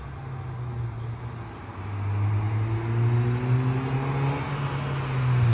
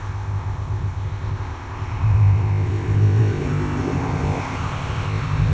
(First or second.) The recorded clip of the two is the first